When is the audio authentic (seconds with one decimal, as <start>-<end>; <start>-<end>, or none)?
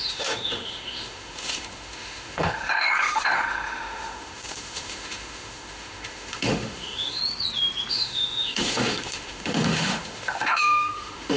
7.2-7.9